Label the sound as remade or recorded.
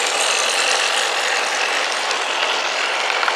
recorded